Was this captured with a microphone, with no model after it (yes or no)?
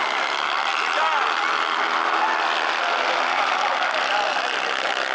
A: yes